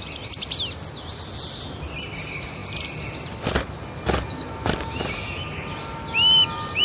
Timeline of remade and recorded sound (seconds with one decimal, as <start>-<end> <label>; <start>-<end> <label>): 0.0-6.8 recorded